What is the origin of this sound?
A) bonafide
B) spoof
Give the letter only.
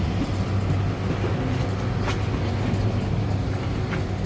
A